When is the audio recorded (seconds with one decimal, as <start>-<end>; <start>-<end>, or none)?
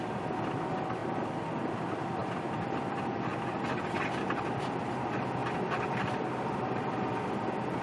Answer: 0.0-1.0; 1.7-2.2; 2.8-5.4